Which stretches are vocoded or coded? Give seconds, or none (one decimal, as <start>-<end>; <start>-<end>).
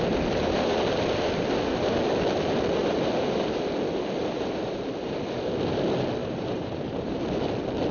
6.2-7.2